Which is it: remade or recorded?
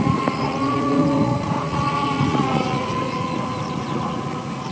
remade